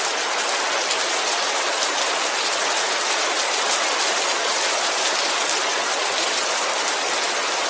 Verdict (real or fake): real